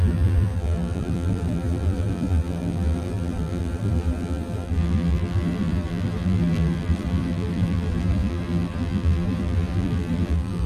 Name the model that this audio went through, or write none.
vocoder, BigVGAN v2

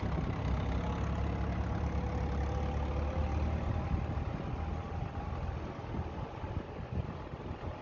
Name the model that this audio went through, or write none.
none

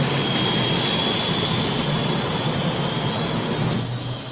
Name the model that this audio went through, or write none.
none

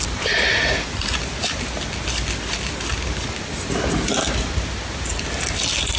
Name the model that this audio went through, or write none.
none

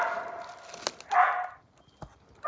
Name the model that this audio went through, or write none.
none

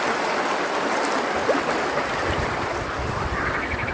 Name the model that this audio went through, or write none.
vocoder, BigVGAN v2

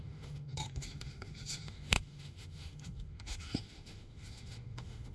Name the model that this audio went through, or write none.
autoencoder, DAC-VAE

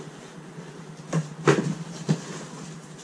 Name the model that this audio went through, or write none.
none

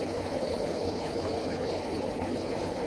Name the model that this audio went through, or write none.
codec, HILCodec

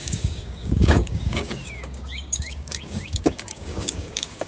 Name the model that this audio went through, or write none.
codec, DAC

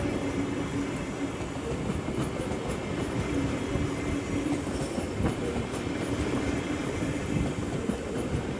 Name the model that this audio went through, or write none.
none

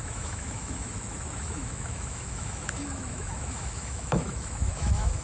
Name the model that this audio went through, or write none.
autoencoder, DAC-VAE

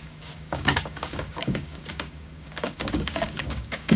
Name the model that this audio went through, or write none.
codec, DAC